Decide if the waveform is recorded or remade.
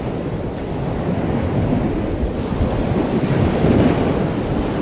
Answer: recorded